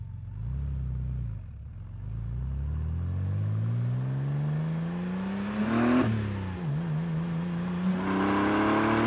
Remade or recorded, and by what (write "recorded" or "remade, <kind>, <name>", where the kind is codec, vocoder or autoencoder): recorded